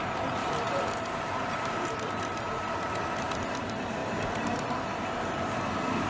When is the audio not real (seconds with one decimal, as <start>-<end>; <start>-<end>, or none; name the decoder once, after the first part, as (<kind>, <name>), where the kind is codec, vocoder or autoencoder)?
0.4-2.5 (vocoder, BigVGAN v2); 4.0-4.6